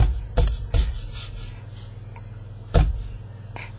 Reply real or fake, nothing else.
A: real